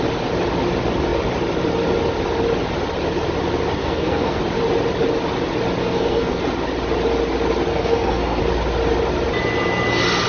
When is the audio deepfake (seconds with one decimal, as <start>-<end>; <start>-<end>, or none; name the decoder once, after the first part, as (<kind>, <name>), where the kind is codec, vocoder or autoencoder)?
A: 3.8-4.4 (codec, SNAC); 5.8-6.4; 7.7-8.4